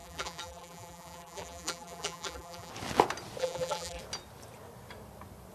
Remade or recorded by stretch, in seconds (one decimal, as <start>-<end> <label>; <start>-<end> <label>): 0.0-2.7 remade; 2.7-3.4 recorded; 3.4-4.0 remade; 4.0-5.5 recorded